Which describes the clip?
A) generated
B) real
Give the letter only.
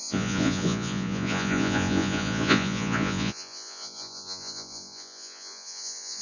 A